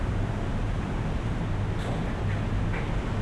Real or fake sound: real